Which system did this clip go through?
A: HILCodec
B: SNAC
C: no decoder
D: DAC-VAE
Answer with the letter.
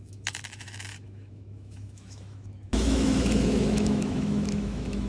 D